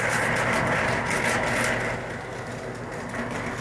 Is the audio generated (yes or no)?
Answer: no